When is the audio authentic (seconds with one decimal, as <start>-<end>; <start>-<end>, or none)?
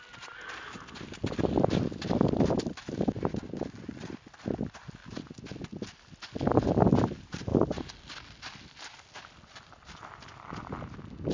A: 0.0-11.3